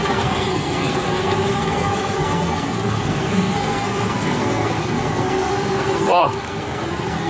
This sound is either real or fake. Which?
fake